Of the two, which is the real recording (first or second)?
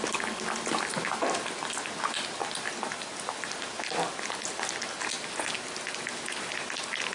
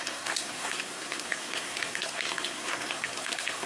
first